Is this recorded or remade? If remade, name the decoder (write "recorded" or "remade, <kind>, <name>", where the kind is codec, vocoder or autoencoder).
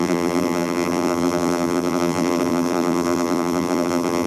remade, vocoder, BigVGAN v2